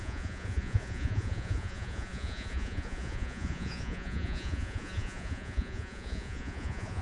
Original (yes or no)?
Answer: no